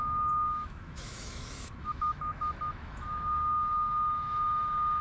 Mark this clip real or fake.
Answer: fake